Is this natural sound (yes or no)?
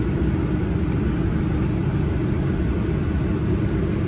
yes